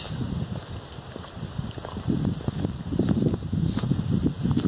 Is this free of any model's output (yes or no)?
yes